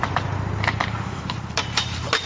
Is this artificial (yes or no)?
no